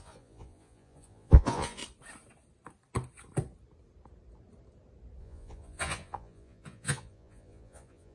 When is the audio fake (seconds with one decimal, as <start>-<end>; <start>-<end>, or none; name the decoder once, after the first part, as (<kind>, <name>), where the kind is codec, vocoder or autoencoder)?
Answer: 0.0-1.8 (vocoder, Vocos); 5.2-8.1